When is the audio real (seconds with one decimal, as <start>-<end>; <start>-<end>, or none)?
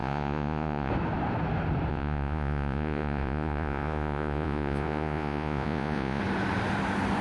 0.9-1.9; 6.2-7.2